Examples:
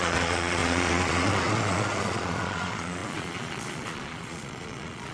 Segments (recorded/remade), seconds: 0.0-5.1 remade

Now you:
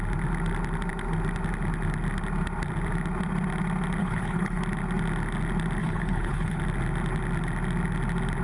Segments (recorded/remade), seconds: 0.0-4.0 recorded; 4.0-4.6 remade; 4.6-5.8 recorded; 5.8-6.6 remade; 6.6-8.4 recorded

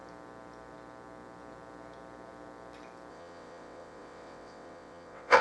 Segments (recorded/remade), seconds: 0.0-3.1 recorded; 3.1-5.4 remade